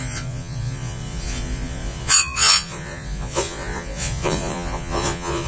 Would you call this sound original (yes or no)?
no